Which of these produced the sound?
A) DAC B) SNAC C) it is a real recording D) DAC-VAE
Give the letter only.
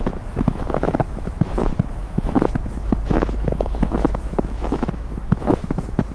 D